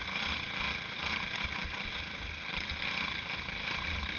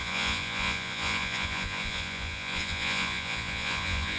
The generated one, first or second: second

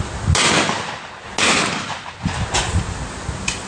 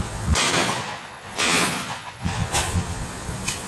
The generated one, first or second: second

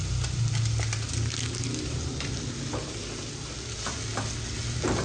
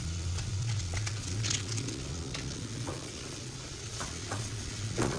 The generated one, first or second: second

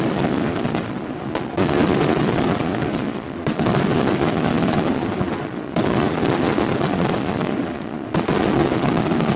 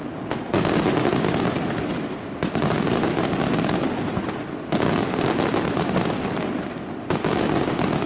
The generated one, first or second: first